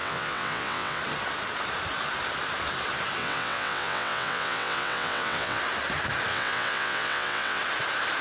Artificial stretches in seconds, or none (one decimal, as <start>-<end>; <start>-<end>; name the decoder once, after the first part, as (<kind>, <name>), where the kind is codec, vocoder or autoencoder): 0.0-1.0 (vocoder, WaveNeXt); 3.2-5.6; 6.3-7.6